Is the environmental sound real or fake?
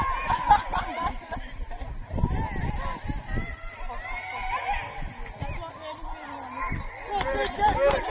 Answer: real